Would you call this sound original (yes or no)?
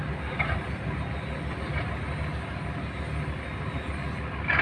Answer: yes